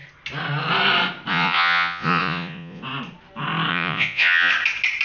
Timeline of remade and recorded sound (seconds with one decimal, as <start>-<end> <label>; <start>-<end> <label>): 0.0-1.3 recorded; 1.3-2.8 remade; 2.8-3.7 recorded; 3.7-4.5 remade; 4.5-5.0 recorded